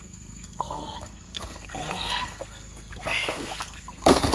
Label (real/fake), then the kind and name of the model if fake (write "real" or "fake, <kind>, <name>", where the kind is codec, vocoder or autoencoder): fake, codec, SNAC